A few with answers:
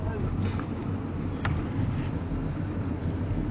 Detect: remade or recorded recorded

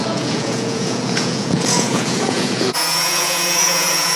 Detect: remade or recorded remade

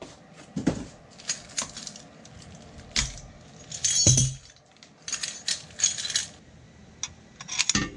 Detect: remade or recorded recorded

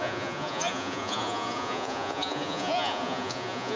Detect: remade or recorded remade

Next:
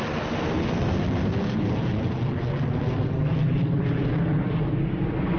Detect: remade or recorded recorded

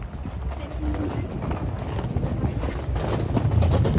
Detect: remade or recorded recorded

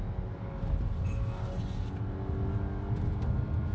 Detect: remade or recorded recorded